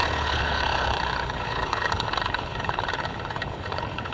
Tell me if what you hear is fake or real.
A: fake